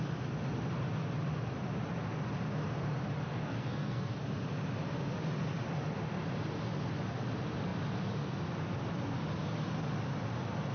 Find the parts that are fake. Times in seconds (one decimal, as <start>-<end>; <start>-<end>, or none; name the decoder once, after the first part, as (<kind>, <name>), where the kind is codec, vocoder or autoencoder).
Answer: 3.3-4.1 (codec, SNAC)